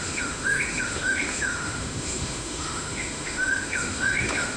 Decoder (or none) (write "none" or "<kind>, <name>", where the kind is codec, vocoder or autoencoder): autoencoder, DAC-VAE